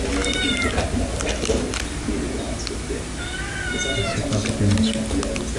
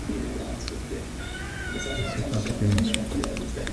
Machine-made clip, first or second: second